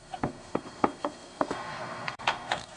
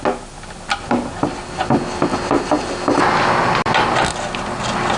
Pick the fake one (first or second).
first